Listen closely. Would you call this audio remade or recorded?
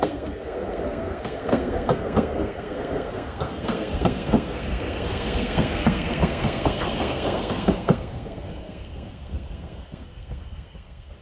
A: remade